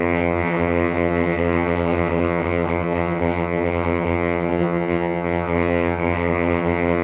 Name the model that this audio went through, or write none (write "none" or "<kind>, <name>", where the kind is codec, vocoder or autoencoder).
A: vocoder, HiFi-GAN